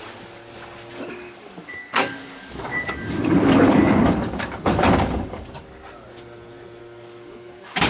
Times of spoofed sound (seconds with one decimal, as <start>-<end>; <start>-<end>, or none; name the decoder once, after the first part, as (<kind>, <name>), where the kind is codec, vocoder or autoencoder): 0.9-5.6 (codec, DAC); 6.8-7.9